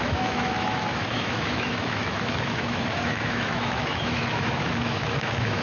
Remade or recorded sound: remade